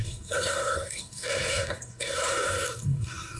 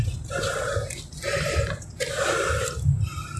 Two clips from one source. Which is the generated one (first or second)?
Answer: first